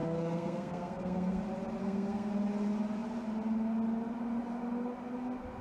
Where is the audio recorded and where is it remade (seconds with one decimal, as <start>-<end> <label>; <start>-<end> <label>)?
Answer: 0.0-1.4 remade; 1.4-1.8 recorded; 1.8-2.3 remade; 2.3-5.6 recorded